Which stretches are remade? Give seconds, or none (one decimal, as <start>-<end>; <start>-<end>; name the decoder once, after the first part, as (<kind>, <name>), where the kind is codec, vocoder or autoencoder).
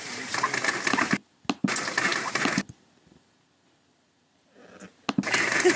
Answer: none